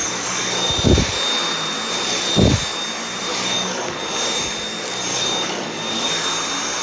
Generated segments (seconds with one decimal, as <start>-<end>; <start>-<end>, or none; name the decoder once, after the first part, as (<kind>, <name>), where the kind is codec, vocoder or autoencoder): 0.0-0.7 (codec, DAC); 3.3-4.0; 5.1-6.1